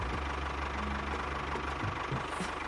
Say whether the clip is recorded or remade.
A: recorded